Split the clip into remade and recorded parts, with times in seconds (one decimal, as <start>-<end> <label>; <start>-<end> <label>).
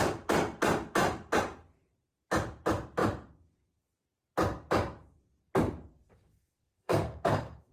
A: 0.0-5.9 recorded; 5.9-7.7 remade